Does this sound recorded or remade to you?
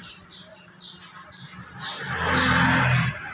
recorded